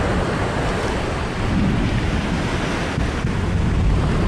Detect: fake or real real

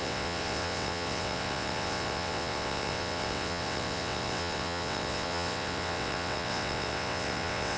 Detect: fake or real fake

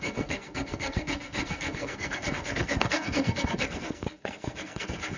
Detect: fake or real fake